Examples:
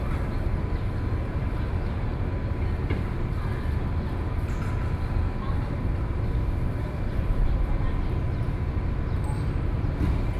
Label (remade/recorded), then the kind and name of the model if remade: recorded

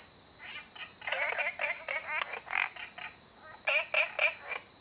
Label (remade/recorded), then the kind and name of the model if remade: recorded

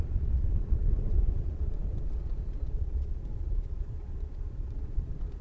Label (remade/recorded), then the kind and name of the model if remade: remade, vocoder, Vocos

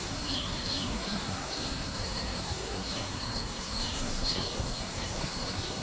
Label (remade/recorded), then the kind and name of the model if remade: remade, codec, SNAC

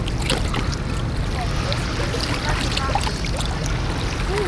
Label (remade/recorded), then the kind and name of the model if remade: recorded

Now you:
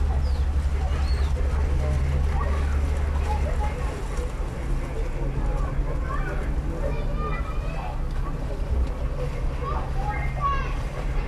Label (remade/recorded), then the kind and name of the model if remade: recorded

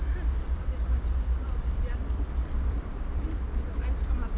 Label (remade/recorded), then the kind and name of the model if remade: remade, vocoder, BigVGAN v2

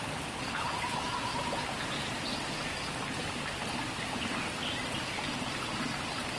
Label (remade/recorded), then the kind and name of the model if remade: recorded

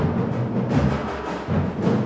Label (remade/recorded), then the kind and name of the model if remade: recorded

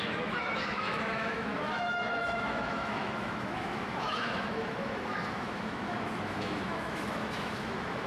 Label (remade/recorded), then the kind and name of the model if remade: remade, autoencoder, DAC-VAE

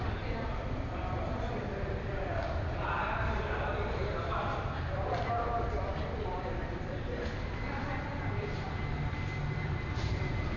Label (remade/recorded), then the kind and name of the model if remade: remade, vocoder, BigVGAN v2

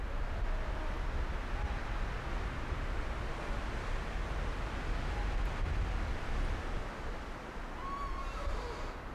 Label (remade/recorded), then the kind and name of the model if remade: recorded